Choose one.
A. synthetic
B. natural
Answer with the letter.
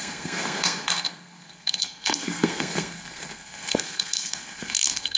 A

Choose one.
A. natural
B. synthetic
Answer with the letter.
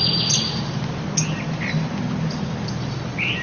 A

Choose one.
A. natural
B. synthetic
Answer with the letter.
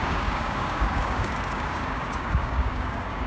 B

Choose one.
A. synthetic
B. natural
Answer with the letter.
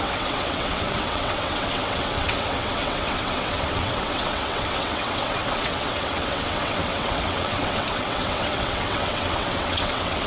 A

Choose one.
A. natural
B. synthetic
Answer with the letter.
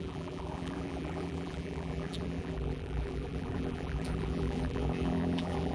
B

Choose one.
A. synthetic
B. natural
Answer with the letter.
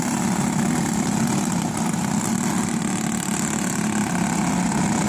B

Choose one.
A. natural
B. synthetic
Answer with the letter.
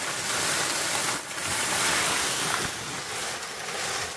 A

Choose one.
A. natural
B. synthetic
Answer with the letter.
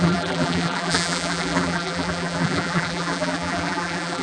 B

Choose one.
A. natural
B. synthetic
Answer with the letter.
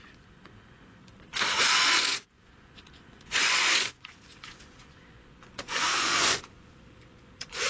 B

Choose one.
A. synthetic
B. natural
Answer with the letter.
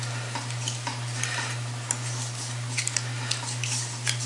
B